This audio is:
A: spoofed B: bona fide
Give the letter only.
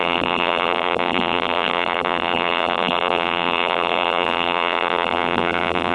A